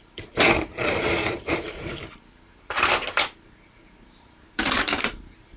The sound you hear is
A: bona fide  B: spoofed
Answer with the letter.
B